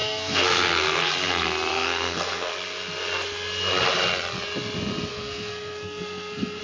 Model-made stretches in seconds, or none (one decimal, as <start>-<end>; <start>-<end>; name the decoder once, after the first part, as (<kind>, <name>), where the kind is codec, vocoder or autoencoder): 0.0-1.1 (codec, SNAC); 1.7-2.5; 5.1-6.6

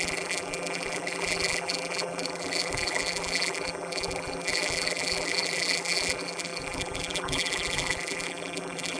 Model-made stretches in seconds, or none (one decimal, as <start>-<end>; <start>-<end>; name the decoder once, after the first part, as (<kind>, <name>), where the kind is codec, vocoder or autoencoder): 0.0-9.0 (vocoder, BigVGAN v2)

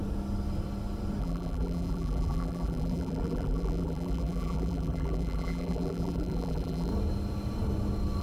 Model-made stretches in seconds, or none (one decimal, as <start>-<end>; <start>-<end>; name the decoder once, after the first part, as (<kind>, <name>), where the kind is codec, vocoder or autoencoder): 1.2-6.9 (vocoder, BigVGAN v2)

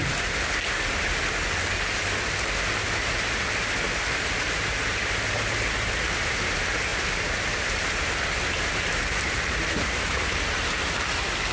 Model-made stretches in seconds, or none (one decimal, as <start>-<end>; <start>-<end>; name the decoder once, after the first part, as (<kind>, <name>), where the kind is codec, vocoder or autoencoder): none

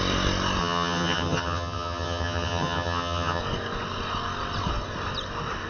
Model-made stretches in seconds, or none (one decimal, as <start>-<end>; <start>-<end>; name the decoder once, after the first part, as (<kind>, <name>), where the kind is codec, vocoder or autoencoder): 0.6-3.4 (vocoder, HiFi-GAN)

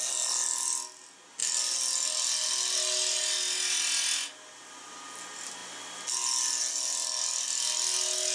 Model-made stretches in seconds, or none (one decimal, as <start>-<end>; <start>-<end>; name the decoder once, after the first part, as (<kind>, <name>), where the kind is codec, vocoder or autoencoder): none